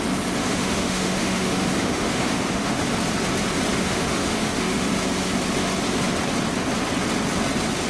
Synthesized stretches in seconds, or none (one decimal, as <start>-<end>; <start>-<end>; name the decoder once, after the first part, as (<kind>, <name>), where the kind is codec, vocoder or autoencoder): 0.4-2.8 (autoencoder, DAC-VAE); 3.7-4.9